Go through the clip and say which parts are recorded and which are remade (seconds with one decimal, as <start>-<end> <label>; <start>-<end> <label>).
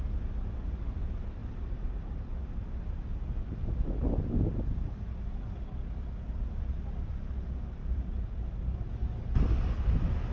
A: 0.0-7.8 recorded; 7.8-8.7 remade; 8.7-10.3 recorded